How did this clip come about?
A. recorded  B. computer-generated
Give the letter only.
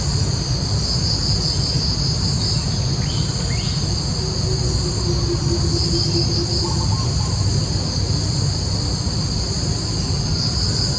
A